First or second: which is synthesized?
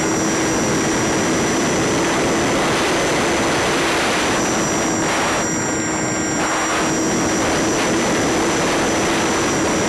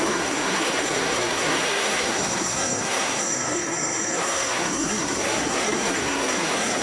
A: second